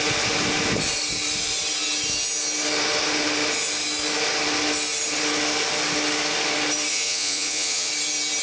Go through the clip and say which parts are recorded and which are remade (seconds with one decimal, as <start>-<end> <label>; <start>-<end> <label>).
0.0-6.9 recorded; 6.9-7.9 remade; 7.9-8.4 recorded

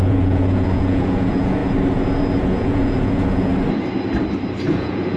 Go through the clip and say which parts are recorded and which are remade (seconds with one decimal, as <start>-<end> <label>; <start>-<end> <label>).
0.0-1.6 remade; 1.6-2.4 recorded; 2.4-3.5 remade; 3.5-4.7 recorded; 4.7-5.2 remade